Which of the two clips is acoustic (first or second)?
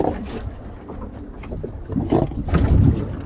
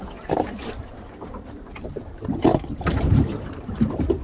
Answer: first